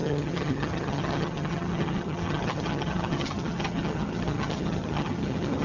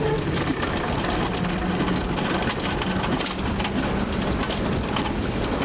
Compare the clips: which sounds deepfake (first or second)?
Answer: first